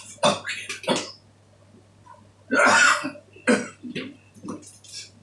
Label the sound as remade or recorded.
recorded